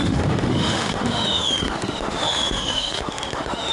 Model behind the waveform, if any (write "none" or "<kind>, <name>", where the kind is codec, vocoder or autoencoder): autoencoder, DAC-VAE